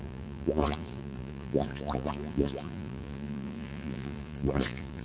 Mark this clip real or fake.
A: fake